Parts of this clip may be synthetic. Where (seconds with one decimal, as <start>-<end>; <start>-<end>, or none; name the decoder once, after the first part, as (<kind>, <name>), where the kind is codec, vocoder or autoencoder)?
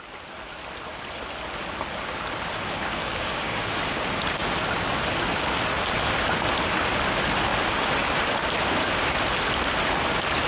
3.0-3.8 (codec, DAC)